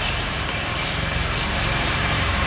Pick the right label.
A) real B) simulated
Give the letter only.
B